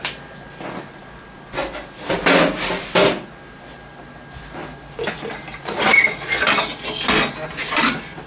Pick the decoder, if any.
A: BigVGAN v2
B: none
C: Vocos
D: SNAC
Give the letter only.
B